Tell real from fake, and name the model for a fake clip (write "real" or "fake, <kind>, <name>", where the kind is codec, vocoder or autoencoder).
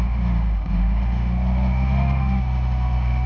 fake, autoencoder, DAC-VAE